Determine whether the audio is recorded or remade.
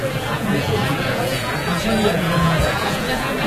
remade